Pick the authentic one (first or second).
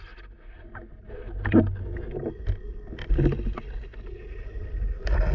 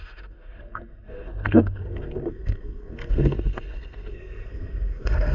first